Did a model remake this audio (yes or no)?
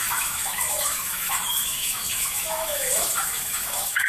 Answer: yes